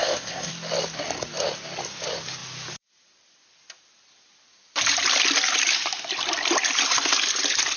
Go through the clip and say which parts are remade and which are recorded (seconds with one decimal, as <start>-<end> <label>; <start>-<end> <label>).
0.0-0.5 remade; 0.5-7.8 recorded